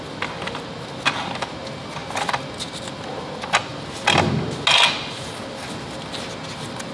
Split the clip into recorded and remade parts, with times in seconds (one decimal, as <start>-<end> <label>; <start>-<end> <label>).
0.0-6.9 recorded